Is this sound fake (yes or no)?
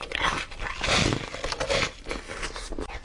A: no